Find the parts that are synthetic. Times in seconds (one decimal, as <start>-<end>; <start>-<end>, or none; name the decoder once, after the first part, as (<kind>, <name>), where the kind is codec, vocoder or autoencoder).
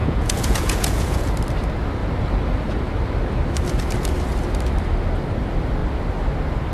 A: 0.0-1.3 (vocoder, Vocos)